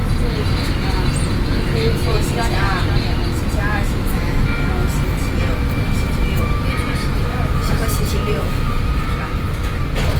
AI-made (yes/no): no